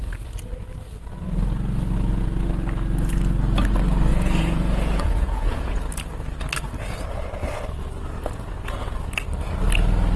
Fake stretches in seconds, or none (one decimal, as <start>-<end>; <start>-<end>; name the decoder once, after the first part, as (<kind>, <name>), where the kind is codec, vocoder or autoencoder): 4.1-5.8 (vocoder, Vocos)

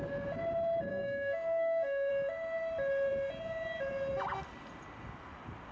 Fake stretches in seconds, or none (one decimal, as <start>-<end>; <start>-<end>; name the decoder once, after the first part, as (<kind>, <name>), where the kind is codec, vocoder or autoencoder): 0.9-2.1 (codec, SNAC)

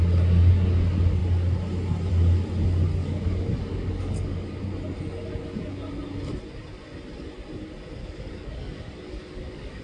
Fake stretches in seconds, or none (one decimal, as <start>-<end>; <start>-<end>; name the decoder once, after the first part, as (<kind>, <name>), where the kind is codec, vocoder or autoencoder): 3.0-4.6 (codec, DAC); 8.0-9.8

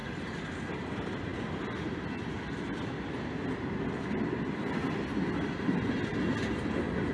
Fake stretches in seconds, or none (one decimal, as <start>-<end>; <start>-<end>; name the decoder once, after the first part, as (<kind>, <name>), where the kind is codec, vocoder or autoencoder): none

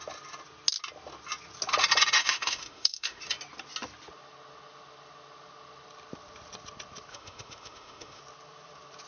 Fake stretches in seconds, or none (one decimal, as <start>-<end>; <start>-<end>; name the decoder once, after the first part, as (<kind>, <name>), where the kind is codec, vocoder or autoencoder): 2.2-3.2 (autoencoder, DAC-VAE); 7.1-8.2

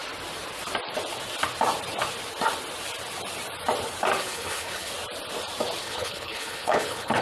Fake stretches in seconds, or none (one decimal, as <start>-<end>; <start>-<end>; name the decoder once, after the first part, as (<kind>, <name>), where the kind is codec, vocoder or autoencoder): 4.2-4.9 (codec, HILCodec); 5.8-7.2

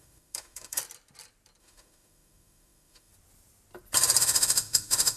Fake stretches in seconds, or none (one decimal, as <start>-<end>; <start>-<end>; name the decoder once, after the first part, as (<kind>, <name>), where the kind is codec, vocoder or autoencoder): 0.0-0.8 (autoencoder, DAC-VAE); 1.6-3.1; 4.2-5.2